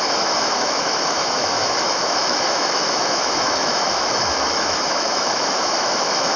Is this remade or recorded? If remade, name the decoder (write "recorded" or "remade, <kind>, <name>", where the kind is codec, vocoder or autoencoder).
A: remade, autoencoder, DAC-VAE